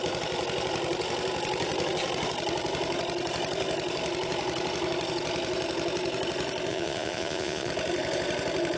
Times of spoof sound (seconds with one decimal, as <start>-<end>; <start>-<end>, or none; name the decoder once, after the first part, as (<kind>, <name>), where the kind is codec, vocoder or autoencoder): 6.7-7.7 (vocoder, Vocos)